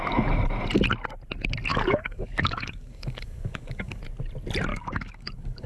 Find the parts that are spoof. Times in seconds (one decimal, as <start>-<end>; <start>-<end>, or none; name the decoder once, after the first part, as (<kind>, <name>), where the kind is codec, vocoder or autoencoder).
1.7-4.0 (codec, DAC); 4.7-5.7